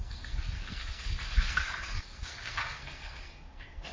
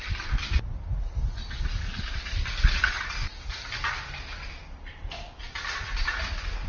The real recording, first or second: second